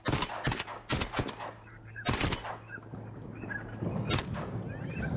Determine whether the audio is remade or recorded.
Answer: recorded